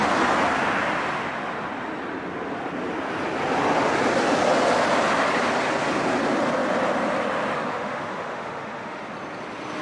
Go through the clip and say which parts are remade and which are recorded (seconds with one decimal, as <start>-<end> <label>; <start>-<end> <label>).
0.0-7.7 recorded; 7.7-9.0 remade; 9.0-9.8 recorded